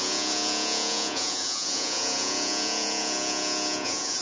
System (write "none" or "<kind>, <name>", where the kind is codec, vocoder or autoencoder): vocoder, Vocos